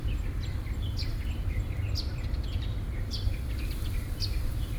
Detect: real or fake real